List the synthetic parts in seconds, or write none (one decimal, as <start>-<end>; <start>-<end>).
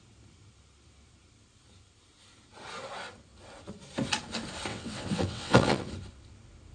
4.7-5.9